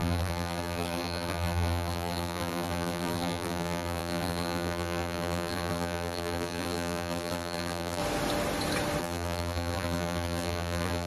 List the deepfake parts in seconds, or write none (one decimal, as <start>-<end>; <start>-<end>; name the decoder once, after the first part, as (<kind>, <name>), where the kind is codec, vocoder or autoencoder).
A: 0.0-8.0 (vocoder, BigVGAN v2); 9.0-11.1